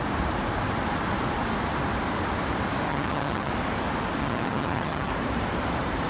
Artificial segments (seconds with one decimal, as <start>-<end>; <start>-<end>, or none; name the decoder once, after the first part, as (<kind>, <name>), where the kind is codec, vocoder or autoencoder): 2.9-3.5 (vocoder, HiFi-GAN); 4.2-5.1